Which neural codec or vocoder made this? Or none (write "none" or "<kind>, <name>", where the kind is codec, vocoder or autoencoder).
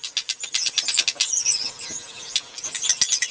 none